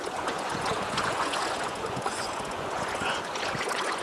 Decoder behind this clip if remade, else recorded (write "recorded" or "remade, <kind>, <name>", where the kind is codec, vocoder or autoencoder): remade, vocoder, Vocos